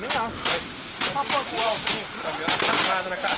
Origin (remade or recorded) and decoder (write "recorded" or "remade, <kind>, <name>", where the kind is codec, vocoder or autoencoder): recorded